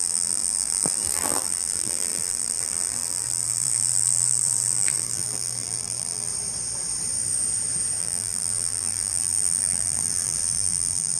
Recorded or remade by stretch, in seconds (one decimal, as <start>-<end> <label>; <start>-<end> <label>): 0.0-6.3 remade; 6.3-8.0 recorded; 8.0-11.2 remade